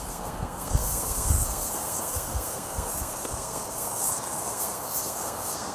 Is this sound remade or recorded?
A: remade